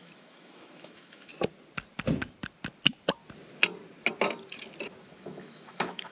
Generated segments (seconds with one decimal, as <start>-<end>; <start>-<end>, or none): 0.0-1.3; 5.0-6.1